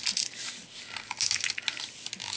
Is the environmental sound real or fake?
real